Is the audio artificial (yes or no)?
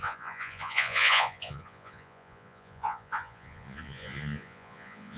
yes